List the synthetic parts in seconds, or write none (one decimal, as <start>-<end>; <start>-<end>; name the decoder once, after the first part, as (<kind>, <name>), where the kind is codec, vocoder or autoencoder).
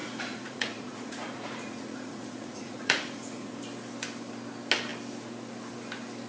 0.0-3.6 (vocoder, Vocos)